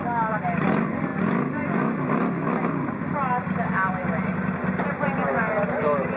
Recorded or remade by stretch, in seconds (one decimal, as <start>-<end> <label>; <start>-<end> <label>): 0.0-6.2 recorded